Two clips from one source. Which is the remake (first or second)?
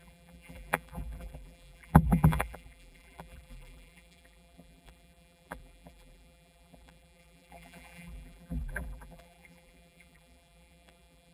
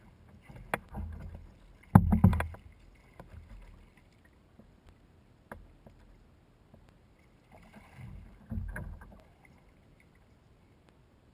first